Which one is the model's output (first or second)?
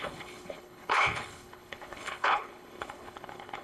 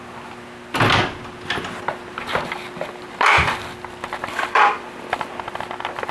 first